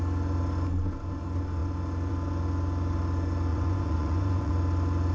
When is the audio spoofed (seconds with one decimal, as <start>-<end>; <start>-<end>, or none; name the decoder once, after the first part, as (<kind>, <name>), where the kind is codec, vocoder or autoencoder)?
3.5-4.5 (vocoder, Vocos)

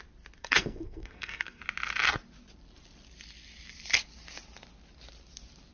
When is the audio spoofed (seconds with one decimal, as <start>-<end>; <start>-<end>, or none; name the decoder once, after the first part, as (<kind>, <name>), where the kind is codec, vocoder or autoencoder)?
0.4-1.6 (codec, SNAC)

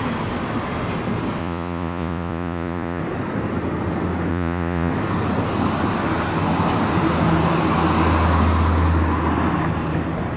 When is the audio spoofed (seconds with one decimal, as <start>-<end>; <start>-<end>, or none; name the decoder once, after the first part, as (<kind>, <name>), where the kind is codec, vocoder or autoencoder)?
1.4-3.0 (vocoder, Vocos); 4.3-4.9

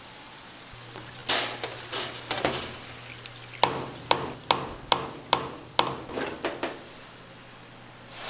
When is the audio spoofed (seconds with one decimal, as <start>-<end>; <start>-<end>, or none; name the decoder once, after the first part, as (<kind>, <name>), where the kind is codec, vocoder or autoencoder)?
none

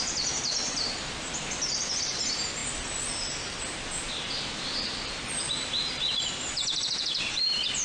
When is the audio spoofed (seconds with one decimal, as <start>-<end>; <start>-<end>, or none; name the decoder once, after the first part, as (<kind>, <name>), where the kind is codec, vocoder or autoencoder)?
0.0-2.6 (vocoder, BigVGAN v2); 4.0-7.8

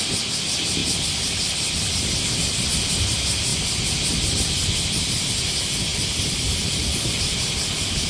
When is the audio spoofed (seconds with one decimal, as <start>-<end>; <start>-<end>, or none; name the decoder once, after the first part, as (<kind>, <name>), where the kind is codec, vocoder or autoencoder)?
none

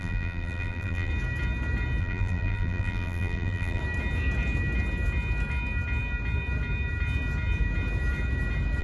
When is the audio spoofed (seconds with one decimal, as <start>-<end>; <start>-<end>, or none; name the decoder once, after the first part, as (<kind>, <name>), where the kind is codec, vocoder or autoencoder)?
0.0-1.1 (vocoder, BigVGAN v2); 2.0-3.8